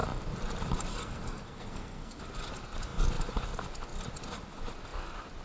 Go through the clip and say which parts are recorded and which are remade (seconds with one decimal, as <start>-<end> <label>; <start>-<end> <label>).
0.0-0.9 recorded; 0.9-2.2 remade; 2.2-5.4 recorded